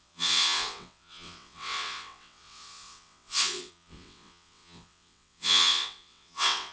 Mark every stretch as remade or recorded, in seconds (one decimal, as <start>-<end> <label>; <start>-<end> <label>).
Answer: 0.0-6.7 remade